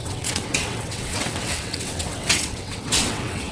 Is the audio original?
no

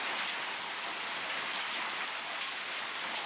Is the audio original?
yes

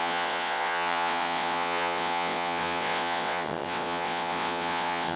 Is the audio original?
no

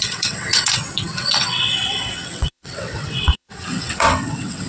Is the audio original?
no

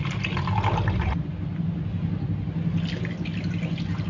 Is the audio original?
yes